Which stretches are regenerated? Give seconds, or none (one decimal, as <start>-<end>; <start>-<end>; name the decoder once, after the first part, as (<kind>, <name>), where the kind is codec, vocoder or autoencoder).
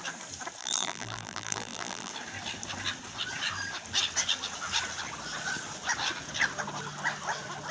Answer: 0.6-2.1 (vocoder, BigVGAN v2)